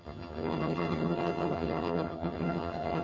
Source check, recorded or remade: remade